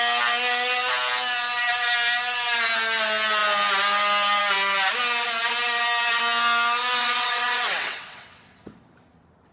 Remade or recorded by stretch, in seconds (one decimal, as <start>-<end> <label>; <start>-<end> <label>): 0.0-7.0 recorded; 7.0-8.8 remade; 8.8-9.5 recorded